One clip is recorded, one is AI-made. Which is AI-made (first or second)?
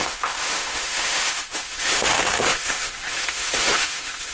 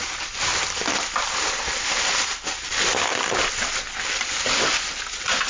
first